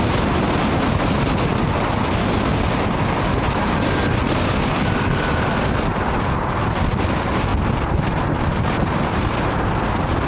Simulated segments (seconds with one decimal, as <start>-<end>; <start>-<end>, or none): none